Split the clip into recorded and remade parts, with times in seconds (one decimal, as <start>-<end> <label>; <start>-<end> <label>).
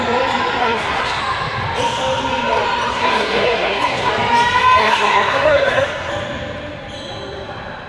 0.0-0.6 recorded; 0.6-1.2 remade; 1.2-2.9 recorded; 2.9-4.1 remade; 4.1-4.8 recorded; 4.8-6.1 remade; 6.1-7.9 recorded